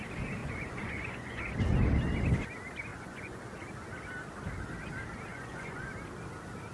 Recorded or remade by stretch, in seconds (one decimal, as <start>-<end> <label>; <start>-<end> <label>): 0.0-0.4 recorded; 0.4-1.5 remade; 1.5-2.9 recorded; 2.9-3.4 remade; 3.4-5.3 recorded; 5.3-5.9 remade; 5.9-6.7 recorded